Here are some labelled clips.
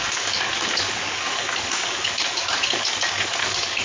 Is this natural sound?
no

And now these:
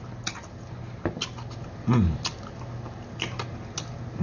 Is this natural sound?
yes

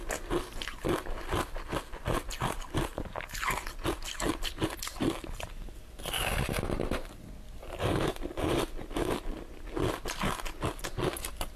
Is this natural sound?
yes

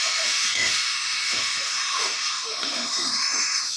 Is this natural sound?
no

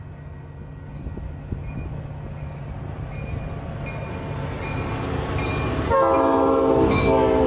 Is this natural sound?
yes